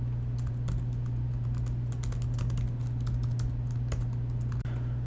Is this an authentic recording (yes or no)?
yes